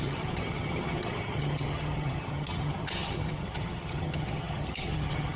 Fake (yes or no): yes